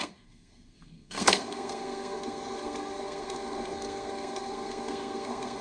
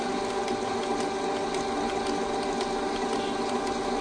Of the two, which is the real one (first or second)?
second